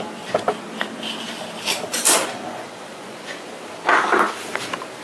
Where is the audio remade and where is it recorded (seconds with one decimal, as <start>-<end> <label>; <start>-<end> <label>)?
0.0-1.9 recorded; 1.9-3.5 remade; 3.5-5.0 recorded